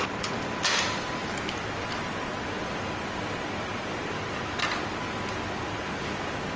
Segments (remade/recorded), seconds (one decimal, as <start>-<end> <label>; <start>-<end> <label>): 0.0-6.6 recorded